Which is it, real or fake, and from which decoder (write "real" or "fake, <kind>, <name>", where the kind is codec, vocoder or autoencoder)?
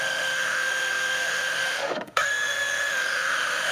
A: fake, autoencoder, DAC-VAE